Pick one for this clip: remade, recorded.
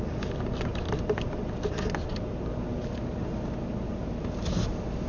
recorded